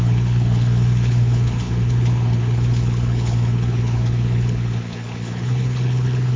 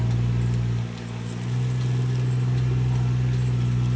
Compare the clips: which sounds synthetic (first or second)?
first